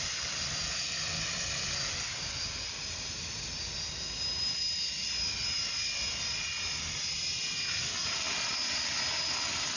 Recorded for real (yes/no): yes